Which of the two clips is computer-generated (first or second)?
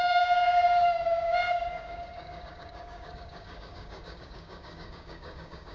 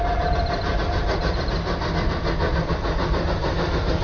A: first